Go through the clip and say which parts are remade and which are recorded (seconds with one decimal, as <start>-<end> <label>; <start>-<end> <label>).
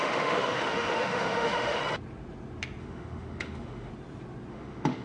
0.0-1.8 remade; 1.8-2.8 recorded; 2.8-3.9 remade; 3.9-4.5 recorded; 4.5-5.0 remade